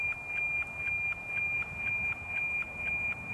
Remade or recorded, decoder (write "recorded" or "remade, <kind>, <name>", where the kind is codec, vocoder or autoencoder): recorded